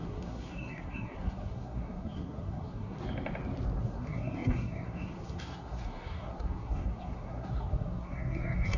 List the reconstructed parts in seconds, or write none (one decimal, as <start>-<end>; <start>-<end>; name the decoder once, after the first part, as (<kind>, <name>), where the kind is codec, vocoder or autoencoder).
0.0-3.0 (codec, SNAC); 3.8-8.8